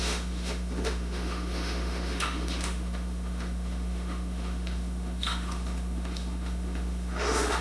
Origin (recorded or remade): remade